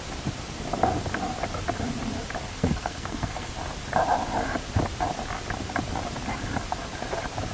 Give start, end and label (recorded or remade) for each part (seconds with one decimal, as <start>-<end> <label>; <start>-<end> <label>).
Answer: 0.0-2.5 recorded; 2.5-3.5 remade; 3.5-7.5 recorded